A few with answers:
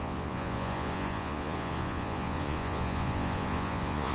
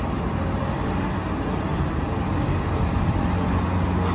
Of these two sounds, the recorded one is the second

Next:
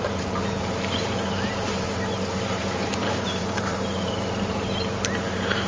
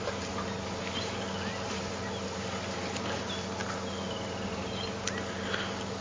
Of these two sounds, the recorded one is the second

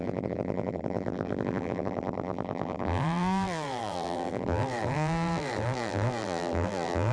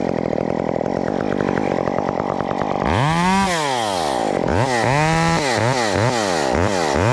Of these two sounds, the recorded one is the second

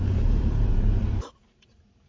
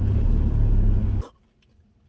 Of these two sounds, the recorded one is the second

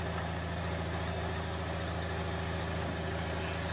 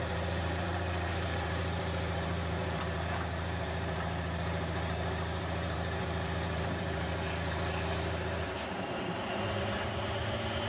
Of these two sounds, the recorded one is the first